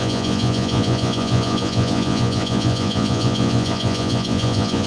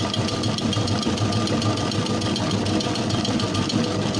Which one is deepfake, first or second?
first